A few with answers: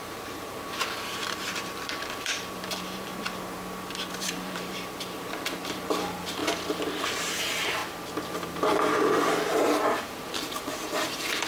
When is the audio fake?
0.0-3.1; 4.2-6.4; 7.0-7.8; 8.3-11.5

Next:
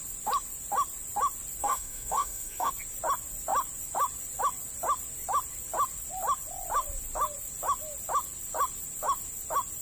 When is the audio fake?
1.6-2.7

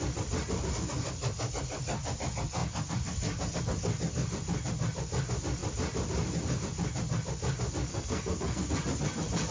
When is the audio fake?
7.9-8.7

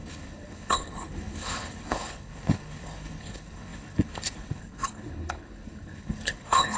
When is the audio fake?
0.0-6.8

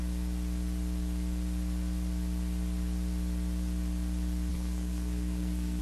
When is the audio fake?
4.5-5.8

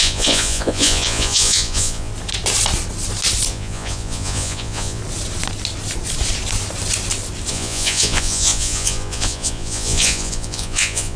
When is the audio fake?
0.0-2.1; 3.5-5.0; 7.5-11.2